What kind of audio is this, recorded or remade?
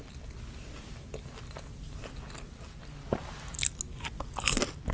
recorded